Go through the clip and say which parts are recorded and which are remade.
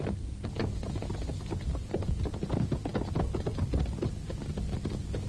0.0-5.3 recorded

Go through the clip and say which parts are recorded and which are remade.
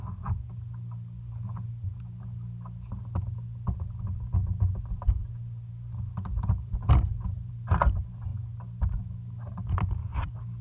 0.0-10.6 recorded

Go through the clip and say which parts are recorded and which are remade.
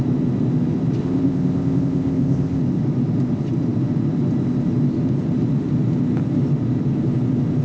0.0-1.0 recorded; 1.0-2.6 remade; 2.6-7.6 recorded